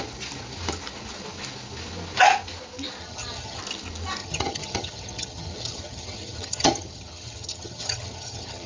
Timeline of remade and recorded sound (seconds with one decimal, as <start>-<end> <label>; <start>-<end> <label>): 0.0-3.0 recorded; 3.0-3.6 remade; 3.6-4.2 recorded; 4.2-8.7 remade